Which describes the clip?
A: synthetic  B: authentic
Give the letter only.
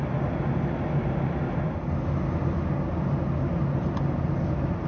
B